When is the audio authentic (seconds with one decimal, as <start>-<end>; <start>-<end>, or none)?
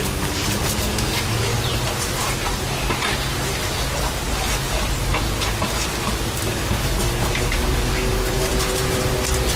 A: 1.5-6.5; 8.5-9.6